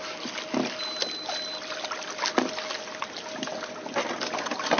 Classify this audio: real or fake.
real